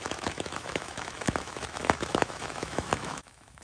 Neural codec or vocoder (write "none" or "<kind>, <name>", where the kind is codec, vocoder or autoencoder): autoencoder, DAC-VAE